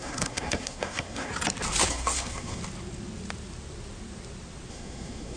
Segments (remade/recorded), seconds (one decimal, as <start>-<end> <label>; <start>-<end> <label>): 0.0-1.3 remade; 1.3-1.9 recorded; 1.9-2.6 remade; 2.6-4.7 recorded; 4.7-5.4 remade